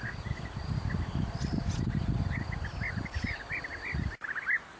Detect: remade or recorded recorded